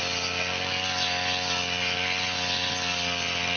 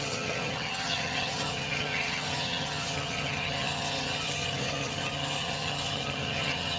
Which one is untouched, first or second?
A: first